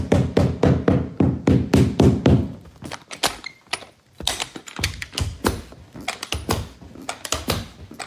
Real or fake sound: real